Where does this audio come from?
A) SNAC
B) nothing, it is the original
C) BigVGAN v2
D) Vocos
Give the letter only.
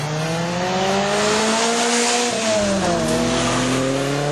B